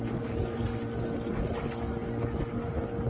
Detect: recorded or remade recorded